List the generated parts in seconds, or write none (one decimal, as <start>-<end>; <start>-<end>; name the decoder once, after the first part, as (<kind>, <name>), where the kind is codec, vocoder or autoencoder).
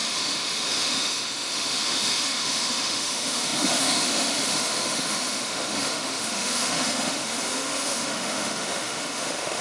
0.0-9.6 (autoencoder, DAC-VAE)